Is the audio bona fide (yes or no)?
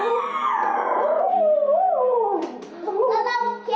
yes